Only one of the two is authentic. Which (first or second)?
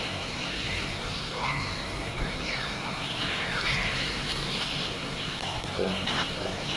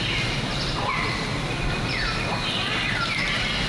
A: second